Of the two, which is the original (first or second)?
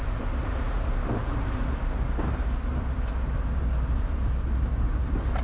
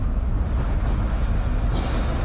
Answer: second